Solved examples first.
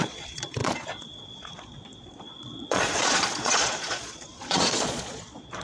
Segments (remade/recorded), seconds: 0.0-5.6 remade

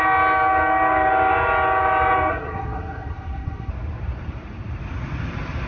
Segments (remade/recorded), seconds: 0.0-2.3 recorded; 2.3-3.7 remade; 3.7-5.7 recorded

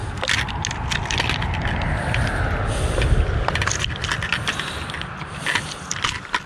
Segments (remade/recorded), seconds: 0.0-6.5 recorded

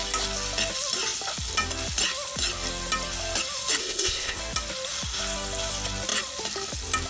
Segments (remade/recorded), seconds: 0.0-3.8 recorded; 3.8-4.4 remade; 4.4-7.1 recorded